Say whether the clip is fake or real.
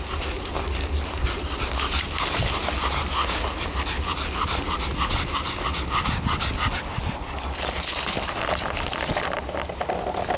real